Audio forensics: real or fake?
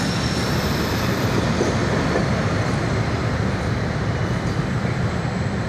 fake